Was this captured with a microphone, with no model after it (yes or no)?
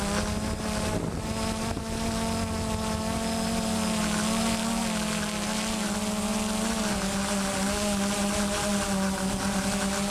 yes